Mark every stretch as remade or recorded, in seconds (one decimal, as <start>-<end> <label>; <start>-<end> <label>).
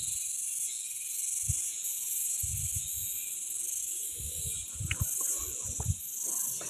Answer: 0.0-3.8 recorded; 3.8-4.4 remade; 4.4-6.7 recorded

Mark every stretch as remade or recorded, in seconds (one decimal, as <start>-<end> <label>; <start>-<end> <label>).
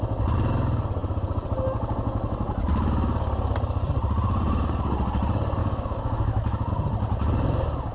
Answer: 0.0-5.6 recorded; 5.6-6.7 remade; 6.7-7.9 recorded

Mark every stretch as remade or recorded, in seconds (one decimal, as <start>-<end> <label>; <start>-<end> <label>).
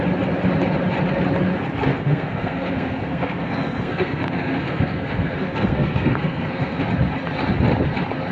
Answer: 0.0-1.9 recorded; 1.9-6.8 remade; 6.8-8.3 recorded